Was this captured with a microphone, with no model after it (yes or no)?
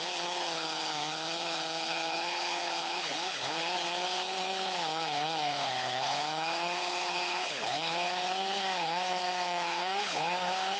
no